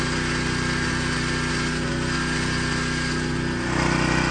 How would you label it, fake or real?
real